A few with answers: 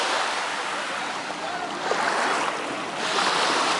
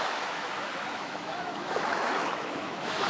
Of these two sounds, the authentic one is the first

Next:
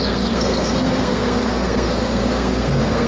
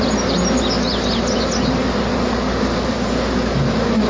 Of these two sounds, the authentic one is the second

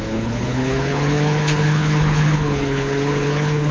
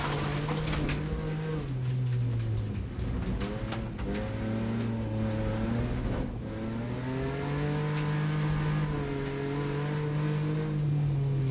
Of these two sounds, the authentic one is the second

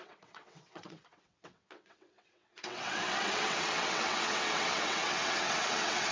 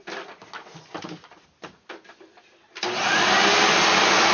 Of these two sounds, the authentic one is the second